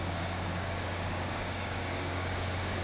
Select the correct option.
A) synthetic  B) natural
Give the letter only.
A